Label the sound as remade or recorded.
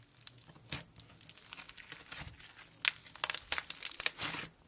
recorded